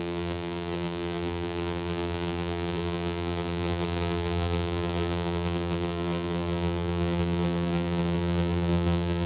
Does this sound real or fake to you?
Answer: fake